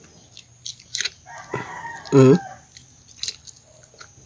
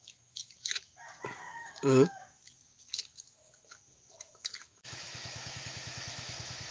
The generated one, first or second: second